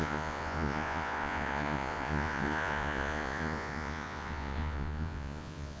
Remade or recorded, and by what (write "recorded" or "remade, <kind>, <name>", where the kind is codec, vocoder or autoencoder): remade, vocoder, Vocos